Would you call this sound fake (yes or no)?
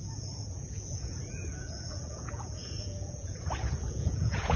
yes